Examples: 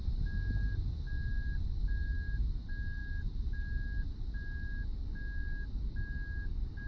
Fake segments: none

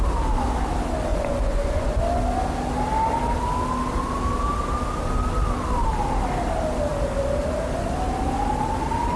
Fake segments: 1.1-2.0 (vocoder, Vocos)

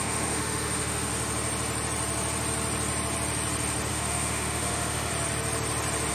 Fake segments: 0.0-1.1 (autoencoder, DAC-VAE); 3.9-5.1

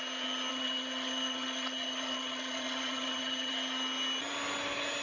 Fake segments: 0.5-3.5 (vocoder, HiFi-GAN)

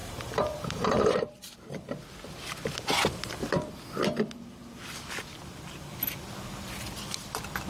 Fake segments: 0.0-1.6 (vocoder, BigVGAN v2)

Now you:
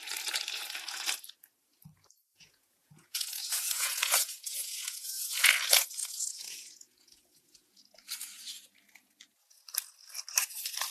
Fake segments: 2.3-5.5 (vocoder, Vocos); 6.0-7.8

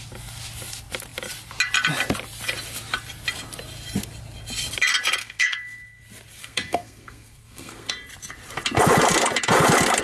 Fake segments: 5.2-6.0 (codec, SNAC); 6.4-7.9